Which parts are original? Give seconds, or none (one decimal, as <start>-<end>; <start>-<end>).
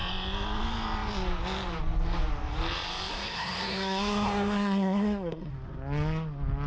0.0-3.1; 5.5-6.7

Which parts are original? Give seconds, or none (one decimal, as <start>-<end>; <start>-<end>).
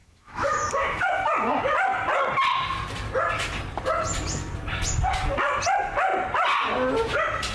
1.3-7.5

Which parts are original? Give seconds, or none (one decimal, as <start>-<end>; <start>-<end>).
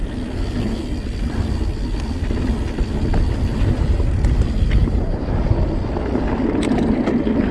0.0-4.8; 5.6-7.5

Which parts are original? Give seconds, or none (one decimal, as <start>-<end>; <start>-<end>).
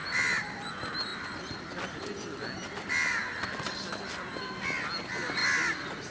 0.0-1.1; 2.0-5.4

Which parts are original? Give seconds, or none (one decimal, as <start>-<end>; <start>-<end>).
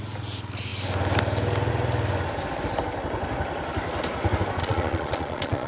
0.0-4.6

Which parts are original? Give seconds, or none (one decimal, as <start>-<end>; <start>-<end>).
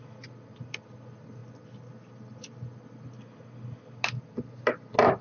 0.0-5.2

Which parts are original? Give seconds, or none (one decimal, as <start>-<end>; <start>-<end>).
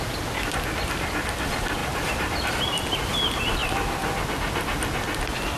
0.0-1.8; 2.5-3.6; 4.2-5.6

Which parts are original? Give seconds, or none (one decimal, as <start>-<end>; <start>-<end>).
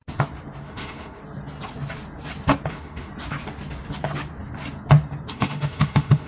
0.0-0.6; 1.2-2.7; 3.1-5.3